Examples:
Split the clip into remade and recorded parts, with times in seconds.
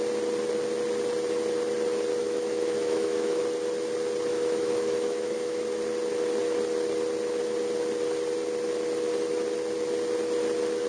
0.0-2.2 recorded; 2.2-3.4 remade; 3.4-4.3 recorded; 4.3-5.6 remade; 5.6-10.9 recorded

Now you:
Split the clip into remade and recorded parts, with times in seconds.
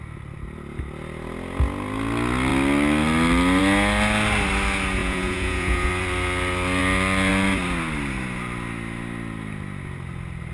0.0-5.0 recorded; 5.0-5.9 remade; 5.9-10.5 recorded